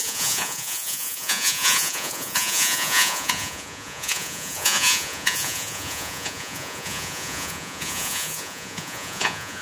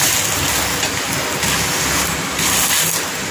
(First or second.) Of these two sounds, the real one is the second